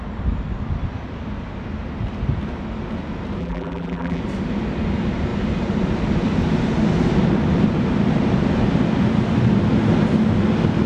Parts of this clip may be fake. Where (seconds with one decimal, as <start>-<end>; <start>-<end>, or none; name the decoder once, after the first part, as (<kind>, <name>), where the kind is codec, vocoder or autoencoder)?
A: 3.4-4.2 (vocoder, BigVGAN v2)